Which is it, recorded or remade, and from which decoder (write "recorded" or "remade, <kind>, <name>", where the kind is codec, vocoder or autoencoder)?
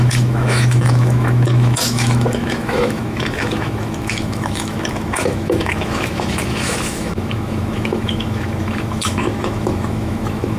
remade, autoencoder, DAC-VAE